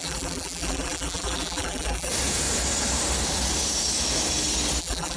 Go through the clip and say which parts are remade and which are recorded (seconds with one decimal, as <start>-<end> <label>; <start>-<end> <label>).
0.0-2.1 remade; 2.1-4.8 recorded; 4.8-5.2 remade

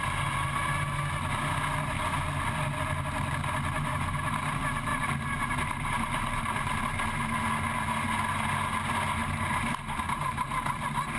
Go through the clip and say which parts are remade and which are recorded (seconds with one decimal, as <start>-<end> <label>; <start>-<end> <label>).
0.0-4.9 recorded; 4.9-6.8 remade; 6.8-9.2 recorded; 9.2-10.6 remade; 10.6-11.2 recorded

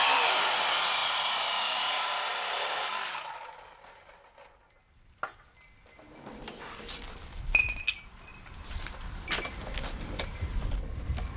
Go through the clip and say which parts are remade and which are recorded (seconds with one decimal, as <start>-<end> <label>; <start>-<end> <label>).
0.0-1.0 remade; 1.0-1.6 recorded; 1.6-2.3 remade; 2.3-6.3 recorded; 6.3-11.4 remade

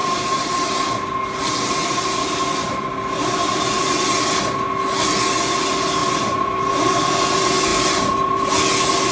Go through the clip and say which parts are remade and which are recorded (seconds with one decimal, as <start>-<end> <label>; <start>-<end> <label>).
0.0-0.7 remade; 0.7-6.0 recorded; 6.0-6.9 remade; 6.9-7.7 recorded; 7.7-8.5 remade; 8.5-9.1 recorded

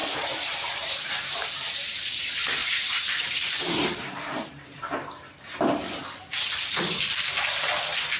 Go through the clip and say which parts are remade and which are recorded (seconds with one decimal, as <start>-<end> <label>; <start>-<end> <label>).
0.0-2.2 remade; 2.2-2.6 recorded; 2.6-4.8 remade; 4.8-8.2 recorded